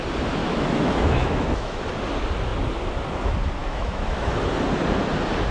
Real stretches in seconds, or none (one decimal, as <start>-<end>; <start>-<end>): 0.0-0.4; 1.8-3.6; 4.3-5.5